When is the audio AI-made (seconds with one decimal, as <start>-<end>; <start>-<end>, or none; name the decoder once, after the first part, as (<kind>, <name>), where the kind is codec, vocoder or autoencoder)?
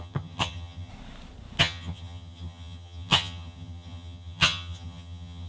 0.0-0.9 (vocoder, HiFi-GAN); 1.6-5.5